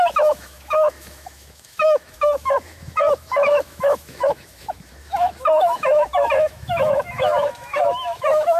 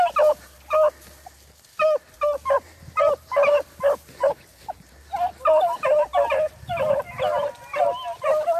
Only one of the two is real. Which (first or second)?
second